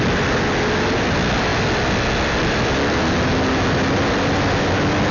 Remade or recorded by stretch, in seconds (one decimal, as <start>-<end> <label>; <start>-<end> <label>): 0.0-5.1 recorded